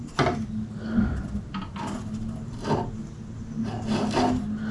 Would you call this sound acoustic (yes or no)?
yes